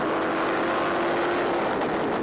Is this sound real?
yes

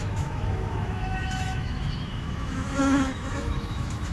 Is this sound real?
no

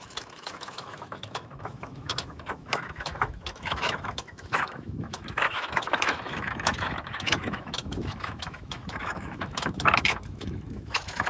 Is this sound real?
no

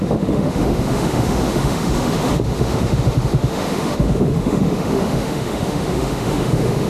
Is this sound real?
no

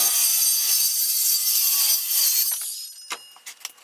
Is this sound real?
yes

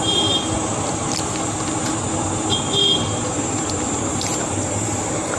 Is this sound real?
yes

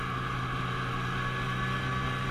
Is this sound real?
yes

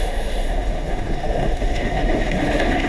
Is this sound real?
no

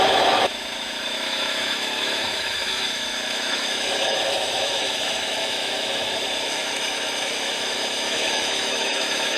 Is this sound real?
no